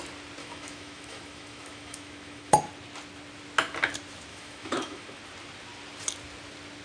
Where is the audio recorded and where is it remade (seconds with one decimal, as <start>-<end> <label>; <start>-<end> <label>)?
0.0-0.4 recorded; 0.4-2.5 remade; 2.5-4.3 recorded; 4.3-5.2 remade; 5.2-6.8 recorded

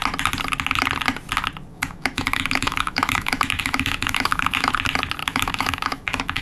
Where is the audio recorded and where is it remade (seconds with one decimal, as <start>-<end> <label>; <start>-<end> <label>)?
0.0-1.7 recorded; 1.7-4.7 remade; 4.7-5.2 recorded; 5.2-6.4 remade

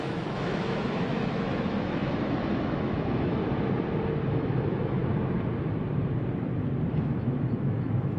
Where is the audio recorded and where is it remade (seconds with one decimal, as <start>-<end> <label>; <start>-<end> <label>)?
0.0-3.4 remade; 3.4-4.3 recorded; 4.3-5.0 remade; 5.0-6.9 recorded; 6.9-8.2 remade

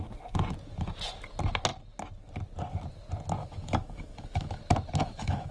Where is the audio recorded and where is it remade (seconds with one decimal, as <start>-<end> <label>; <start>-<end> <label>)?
0.0-3.4 recorded; 3.4-4.6 remade; 4.6-5.0 recorded; 5.0-5.5 remade

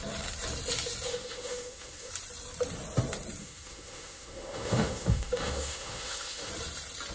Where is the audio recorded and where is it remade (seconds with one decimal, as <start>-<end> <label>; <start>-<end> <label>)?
0.0-1.1 recorded; 1.1-2.1 remade; 2.1-3.4 recorded; 3.4-6.5 remade; 6.5-7.1 recorded

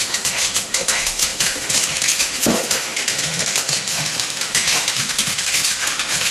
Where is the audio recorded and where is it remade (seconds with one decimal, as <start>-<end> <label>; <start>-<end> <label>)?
0.0-6.3 remade